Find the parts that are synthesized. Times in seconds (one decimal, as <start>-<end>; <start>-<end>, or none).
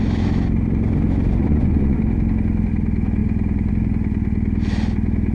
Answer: 1.4-2.0